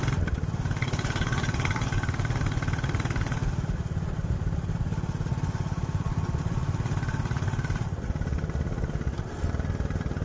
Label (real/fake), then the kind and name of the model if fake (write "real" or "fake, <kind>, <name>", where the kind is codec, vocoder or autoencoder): real